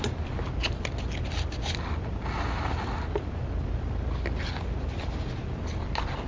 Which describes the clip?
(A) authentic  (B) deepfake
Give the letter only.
A